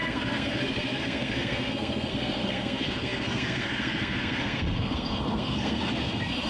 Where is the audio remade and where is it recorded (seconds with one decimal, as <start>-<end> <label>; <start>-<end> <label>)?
0.0-6.5 remade